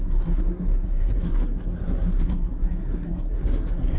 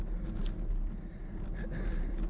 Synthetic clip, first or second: first